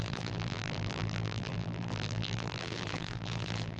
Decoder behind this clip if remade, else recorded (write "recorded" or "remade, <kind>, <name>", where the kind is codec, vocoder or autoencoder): remade, vocoder, BigVGAN v2